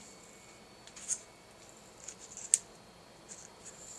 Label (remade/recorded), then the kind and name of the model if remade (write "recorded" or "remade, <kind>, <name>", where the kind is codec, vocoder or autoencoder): recorded